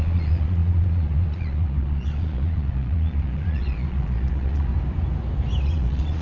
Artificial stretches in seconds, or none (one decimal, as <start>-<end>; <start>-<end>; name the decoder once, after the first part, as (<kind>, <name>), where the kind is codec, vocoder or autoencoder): 0.0-4.7 (vocoder, Vocos); 5.6-6.2